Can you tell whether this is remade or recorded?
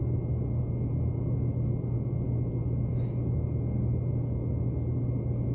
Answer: recorded